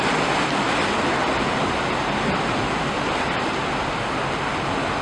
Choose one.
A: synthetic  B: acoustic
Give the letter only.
B